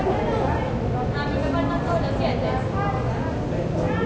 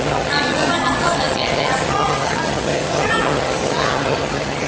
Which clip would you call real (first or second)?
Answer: first